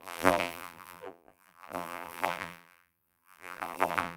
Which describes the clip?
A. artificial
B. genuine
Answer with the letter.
A